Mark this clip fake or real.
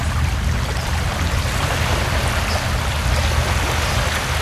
real